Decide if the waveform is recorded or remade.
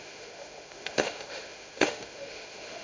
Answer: remade